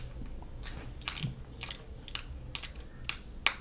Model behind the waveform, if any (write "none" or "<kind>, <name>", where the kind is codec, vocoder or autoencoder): none